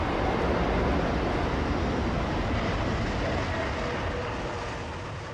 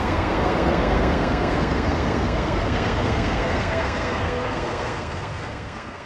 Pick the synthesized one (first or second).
second